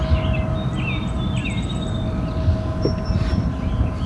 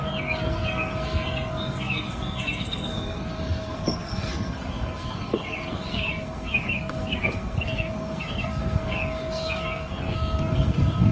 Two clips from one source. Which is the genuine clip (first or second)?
first